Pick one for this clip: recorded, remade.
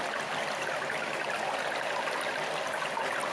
recorded